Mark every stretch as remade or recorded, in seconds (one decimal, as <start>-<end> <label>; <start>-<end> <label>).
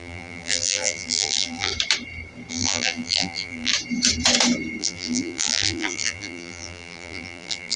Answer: 0.0-1.7 remade; 1.7-2.5 recorded; 2.5-3.7 remade; 3.7-4.8 recorded; 4.8-7.8 remade